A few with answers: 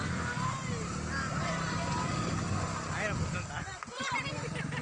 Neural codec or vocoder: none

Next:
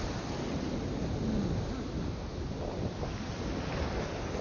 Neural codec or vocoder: none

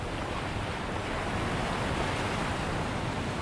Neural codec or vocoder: none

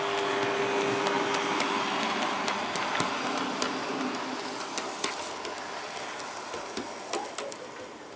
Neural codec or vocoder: none